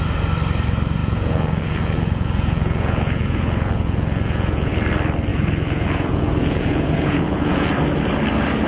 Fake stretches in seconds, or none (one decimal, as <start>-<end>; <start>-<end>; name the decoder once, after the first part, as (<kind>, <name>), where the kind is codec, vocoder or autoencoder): 1.0-4.7 (vocoder, Vocos); 5.3-7.7

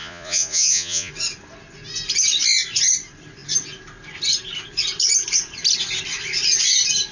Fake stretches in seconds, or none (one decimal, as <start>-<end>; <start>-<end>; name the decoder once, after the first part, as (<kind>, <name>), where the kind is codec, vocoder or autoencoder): 0.0-1.1 (vocoder, Vocos)

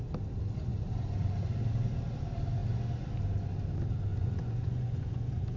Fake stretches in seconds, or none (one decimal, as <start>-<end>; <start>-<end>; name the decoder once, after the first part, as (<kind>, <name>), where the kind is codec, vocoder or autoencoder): 4.1-5.6 (vocoder, Vocos)

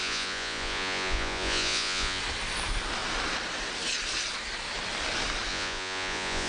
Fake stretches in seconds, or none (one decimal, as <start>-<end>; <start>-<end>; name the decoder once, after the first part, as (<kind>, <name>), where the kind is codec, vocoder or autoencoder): 0.0-2.2 (vocoder, Vocos); 5.5-6.5

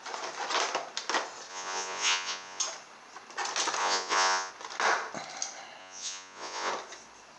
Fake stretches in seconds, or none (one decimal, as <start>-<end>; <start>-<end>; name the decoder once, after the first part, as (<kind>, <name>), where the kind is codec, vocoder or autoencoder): 1.5-2.6 (vocoder, Vocos); 3.8-4.5; 5.8-6.7